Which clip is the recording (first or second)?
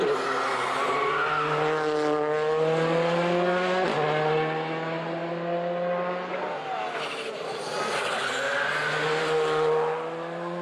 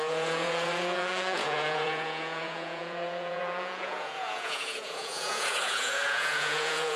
first